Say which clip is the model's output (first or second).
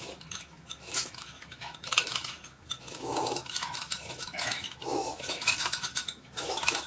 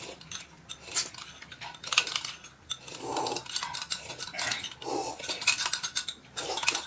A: first